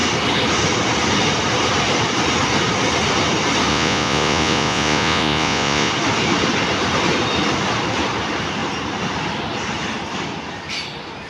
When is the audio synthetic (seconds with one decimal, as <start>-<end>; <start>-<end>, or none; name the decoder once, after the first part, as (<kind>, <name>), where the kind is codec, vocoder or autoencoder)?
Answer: 3.7-5.9 (vocoder, Vocos)